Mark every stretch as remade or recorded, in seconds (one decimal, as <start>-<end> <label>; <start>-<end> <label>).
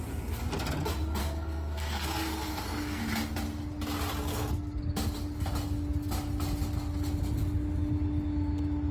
0.0-1.2 recorded; 1.2-3.0 remade; 3.0-4.3 recorded; 4.3-4.8 remade; 4.8-8.9 recorded